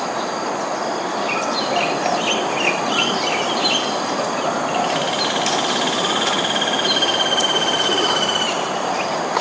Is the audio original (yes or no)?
yes